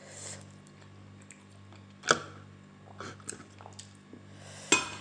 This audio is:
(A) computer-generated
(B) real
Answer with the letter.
B